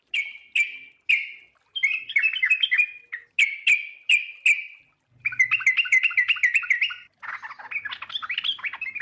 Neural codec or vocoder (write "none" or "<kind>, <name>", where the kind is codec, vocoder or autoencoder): none